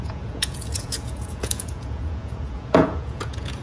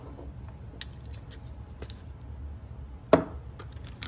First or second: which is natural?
second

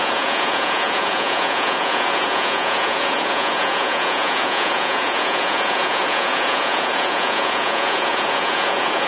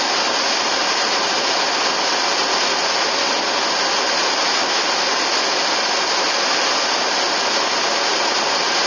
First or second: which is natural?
second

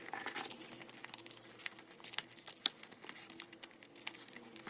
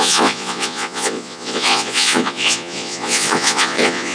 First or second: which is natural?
first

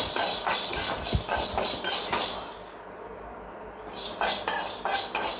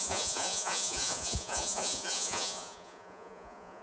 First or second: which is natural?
first